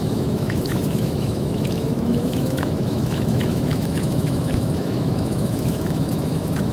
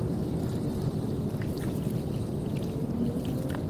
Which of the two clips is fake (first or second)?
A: first